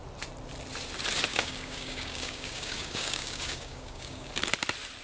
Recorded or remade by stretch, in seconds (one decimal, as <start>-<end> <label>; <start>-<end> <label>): 0.0-1.3 recorded; 1.3-4.3 remade; 4.3-5.0 recorded